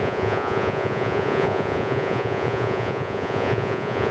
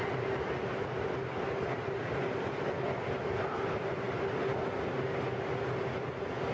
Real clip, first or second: second